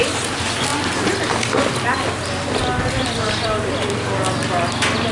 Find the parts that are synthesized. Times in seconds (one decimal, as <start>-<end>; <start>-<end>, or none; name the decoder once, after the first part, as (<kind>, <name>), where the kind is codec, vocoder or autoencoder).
none